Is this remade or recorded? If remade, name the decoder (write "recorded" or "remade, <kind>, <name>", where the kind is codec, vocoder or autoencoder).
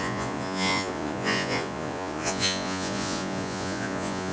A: remade, vocoder, Vocos